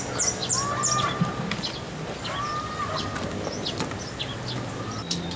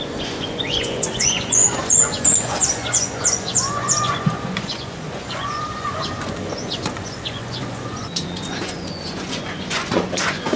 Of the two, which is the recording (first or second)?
first